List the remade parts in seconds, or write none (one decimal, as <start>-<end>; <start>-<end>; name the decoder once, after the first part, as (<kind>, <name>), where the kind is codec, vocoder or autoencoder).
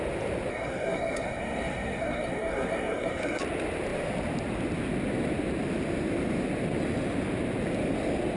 0.5-3.4 (codec, SNAC)